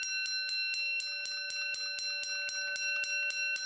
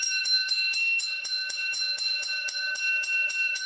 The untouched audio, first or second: first